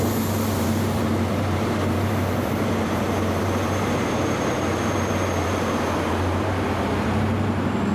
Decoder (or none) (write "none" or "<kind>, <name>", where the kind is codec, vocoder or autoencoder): vocoder, BigVGAN v2